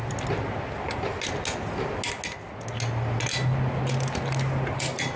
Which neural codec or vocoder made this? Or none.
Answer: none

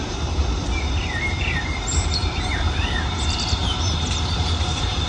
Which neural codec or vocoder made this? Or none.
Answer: vocoder, BigVGAN v2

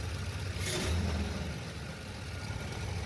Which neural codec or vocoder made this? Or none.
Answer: none